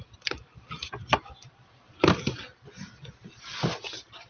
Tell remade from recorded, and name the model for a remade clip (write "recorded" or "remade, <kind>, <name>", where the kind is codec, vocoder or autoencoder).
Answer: recorded